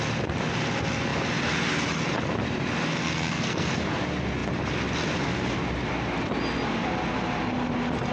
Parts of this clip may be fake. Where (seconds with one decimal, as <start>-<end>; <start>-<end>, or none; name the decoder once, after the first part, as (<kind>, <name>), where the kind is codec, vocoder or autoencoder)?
3.0-3.7 (codec, SNAC)